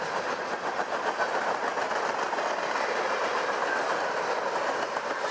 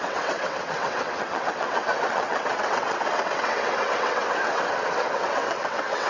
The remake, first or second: second